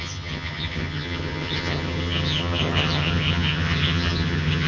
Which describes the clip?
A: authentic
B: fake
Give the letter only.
B